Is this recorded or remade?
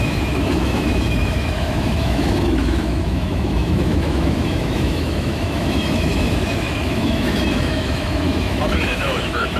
remade